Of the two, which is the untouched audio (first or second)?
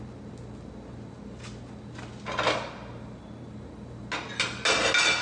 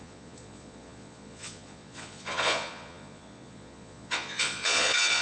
first